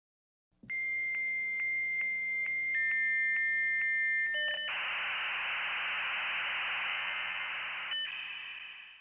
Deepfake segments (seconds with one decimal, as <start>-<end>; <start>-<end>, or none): 6.9-7.5